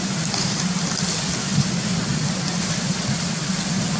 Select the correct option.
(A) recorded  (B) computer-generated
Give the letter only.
A